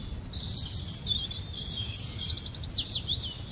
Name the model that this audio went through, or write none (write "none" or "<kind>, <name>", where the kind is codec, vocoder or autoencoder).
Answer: none